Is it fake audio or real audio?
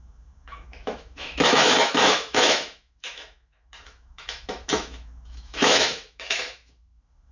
fake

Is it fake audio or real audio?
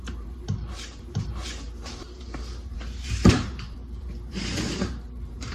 fake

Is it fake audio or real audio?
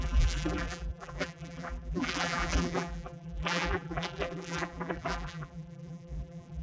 fake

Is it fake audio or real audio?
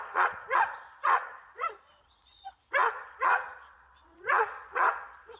fake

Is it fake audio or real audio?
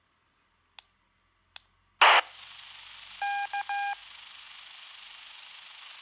real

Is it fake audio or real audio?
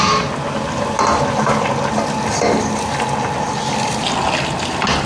real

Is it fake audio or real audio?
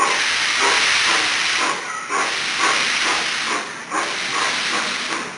real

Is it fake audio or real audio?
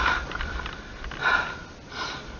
real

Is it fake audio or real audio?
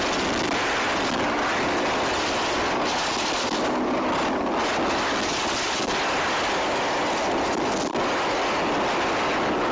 real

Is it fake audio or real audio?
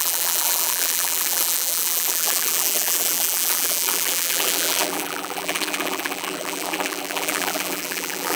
fake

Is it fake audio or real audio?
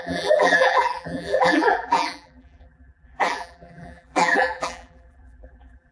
fake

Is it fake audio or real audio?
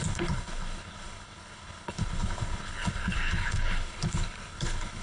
fake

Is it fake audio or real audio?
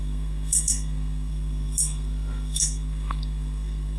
fake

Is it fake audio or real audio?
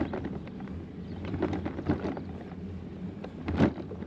real